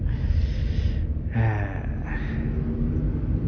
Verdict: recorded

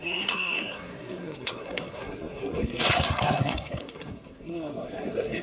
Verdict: remade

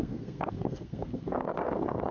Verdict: remade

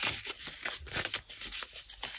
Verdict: recorded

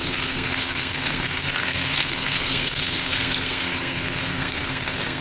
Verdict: remade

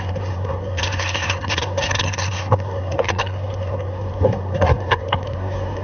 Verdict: remade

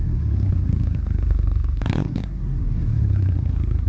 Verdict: remade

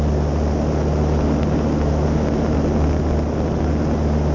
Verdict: recorded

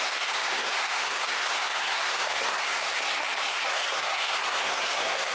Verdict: remade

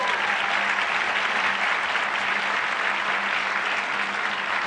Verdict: recorded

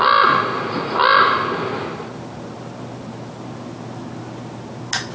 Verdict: recorded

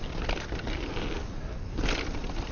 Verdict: recorded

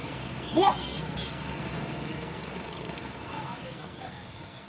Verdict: remade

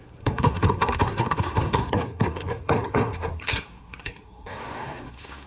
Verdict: remade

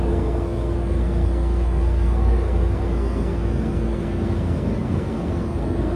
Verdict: remade